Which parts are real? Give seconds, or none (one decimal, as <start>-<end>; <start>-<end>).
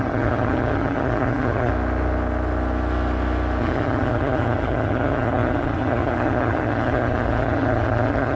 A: 1.7-3.6